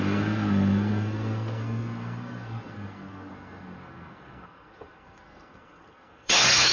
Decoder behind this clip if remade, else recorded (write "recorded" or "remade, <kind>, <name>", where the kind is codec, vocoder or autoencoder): remade, codec, SNAC